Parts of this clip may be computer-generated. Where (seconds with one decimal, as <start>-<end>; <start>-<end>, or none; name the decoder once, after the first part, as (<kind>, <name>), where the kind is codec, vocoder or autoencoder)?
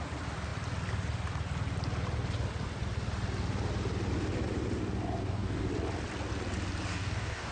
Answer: 5.2-5.7 (codec, DAC); 6.9-7.5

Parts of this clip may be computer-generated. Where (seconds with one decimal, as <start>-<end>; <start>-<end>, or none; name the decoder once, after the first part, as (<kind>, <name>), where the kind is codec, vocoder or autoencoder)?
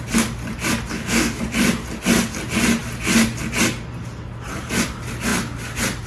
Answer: 0.9-1.4 (codec, DAC)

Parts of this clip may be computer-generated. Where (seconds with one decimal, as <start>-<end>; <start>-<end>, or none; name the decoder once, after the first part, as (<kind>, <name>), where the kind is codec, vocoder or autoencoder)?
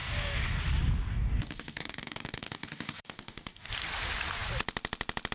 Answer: 0.0-0.6 (codec, DAC); 1.1-3.7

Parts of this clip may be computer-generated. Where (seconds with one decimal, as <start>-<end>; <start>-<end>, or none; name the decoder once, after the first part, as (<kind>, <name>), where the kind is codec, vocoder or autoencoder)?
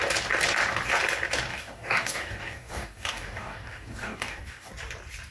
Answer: 1.5-4.7 (codec, DAC)